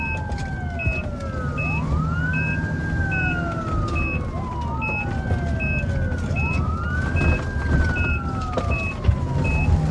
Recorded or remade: recorded